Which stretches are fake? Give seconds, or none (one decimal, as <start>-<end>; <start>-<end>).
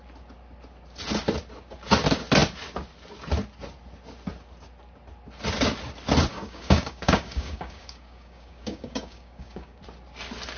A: 6.3-9.8